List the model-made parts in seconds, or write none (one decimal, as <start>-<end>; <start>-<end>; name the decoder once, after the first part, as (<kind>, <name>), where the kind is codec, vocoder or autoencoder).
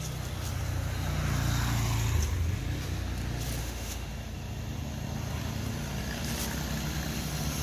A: 3.6-4.1 (autoencoder, DAC-VAE)